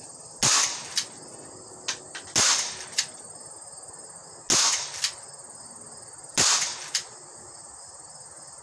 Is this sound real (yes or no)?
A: yes